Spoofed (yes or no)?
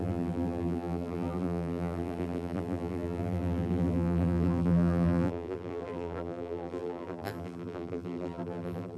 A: yes